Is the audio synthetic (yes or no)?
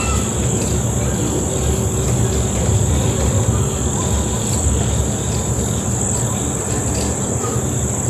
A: no